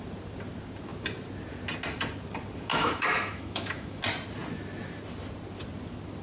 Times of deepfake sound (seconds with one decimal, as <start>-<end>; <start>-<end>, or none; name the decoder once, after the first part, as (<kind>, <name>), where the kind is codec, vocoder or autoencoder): 2.7-4.0 (autoencoder, DAC-VAE)